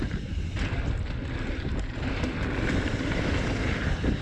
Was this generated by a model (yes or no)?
no